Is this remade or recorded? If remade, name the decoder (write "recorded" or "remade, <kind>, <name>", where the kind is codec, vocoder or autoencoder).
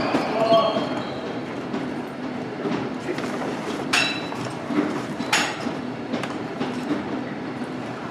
remade, vocoder, BigVGAN v2